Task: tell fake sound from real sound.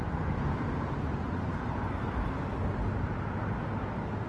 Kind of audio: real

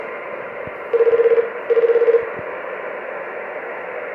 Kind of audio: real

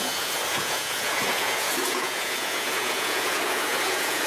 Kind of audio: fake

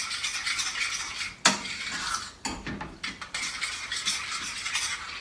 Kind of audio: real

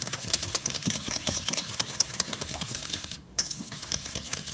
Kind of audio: fake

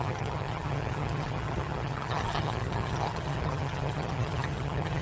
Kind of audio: fake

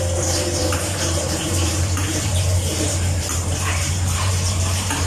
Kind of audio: fake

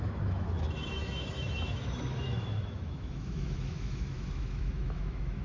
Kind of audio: fake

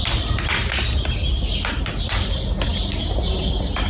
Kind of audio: real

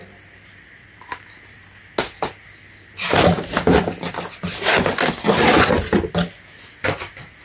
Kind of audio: real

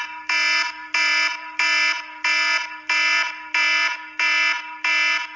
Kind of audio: real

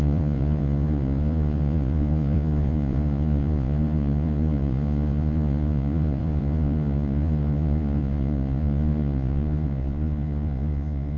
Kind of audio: fake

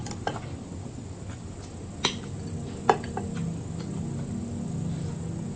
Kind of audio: real